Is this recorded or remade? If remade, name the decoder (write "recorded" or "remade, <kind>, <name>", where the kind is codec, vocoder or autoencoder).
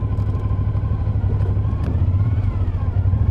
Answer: remade, vocoder, BigVGAN v2